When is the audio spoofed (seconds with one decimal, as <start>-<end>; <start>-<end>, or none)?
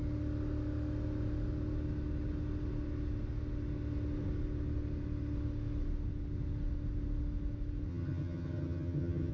7.9-9.3